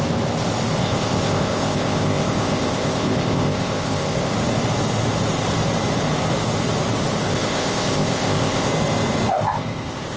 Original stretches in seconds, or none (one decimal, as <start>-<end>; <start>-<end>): 0.0-0.8; 4.3-7.3; 8.7-9.3